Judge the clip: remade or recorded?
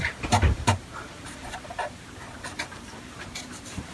remade